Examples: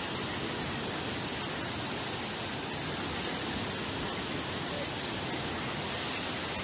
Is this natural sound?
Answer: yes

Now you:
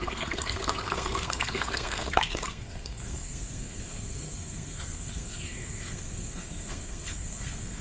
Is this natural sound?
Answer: no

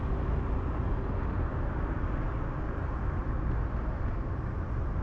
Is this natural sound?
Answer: yes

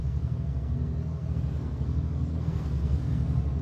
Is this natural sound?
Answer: no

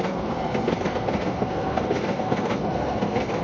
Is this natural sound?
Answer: no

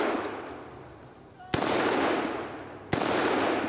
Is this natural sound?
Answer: yes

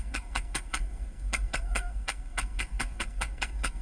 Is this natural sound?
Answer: no